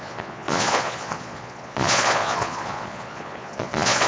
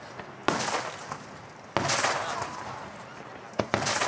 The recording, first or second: second